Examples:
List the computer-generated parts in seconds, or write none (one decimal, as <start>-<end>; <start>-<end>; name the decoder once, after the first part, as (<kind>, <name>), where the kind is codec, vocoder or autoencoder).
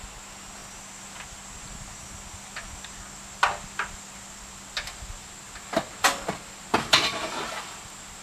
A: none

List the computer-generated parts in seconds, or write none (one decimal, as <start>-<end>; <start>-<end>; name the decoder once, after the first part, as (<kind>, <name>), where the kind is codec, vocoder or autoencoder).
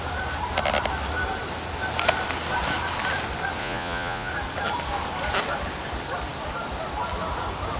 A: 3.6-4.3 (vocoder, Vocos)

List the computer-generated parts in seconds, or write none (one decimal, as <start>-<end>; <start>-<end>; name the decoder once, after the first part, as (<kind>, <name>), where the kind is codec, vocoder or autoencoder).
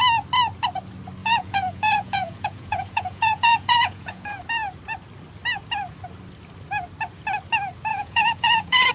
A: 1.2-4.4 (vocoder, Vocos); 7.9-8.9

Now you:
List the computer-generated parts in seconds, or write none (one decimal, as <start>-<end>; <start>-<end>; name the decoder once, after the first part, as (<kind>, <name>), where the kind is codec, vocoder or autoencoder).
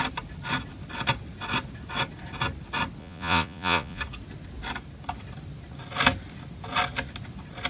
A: 3.0-4.0 (vocoder, Vocos)